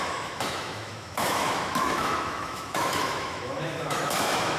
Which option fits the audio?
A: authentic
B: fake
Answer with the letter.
B